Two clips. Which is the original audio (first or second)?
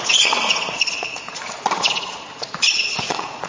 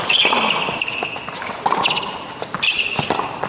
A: second